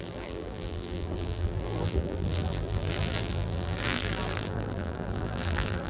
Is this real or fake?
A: fake